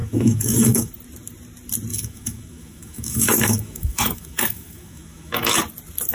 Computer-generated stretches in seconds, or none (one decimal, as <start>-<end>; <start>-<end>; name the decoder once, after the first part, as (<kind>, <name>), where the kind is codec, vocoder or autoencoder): 0.0-0.9 (autoencoder, DAC-VAE); 1.9-5.6